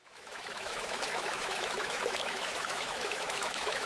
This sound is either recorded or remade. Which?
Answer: remade